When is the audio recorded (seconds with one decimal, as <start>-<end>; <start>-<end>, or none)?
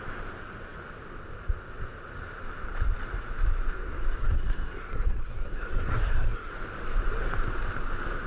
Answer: 0.0-4.2; 6.5-8.3